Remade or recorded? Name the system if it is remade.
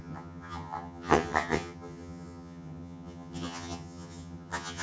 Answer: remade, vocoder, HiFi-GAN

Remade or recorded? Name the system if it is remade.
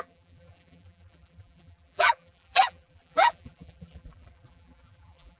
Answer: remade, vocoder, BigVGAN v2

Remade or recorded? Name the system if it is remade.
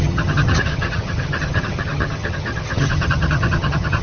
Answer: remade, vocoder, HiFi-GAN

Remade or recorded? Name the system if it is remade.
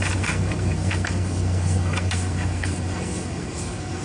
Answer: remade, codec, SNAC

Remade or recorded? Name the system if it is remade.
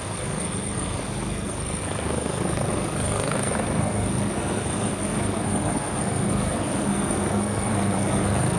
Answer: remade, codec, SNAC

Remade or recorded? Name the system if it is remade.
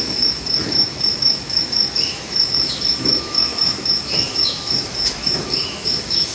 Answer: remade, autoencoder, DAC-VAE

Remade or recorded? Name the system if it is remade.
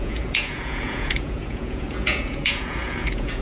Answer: remade, vocoder, Vocos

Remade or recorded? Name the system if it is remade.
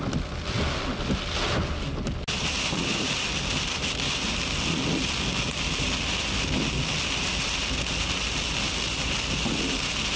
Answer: recorded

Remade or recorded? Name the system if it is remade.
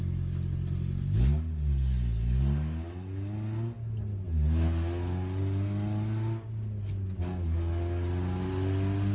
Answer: recorded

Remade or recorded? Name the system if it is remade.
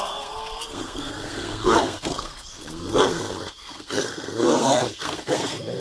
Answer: remade, codec, SNAC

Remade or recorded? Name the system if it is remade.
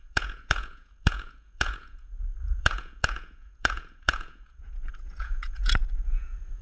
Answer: remade, vocoder, Vocos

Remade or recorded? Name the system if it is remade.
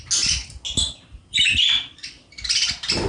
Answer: recorded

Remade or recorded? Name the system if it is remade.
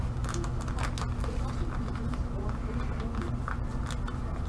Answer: recorded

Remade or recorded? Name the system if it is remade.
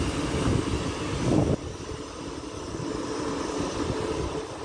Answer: recorded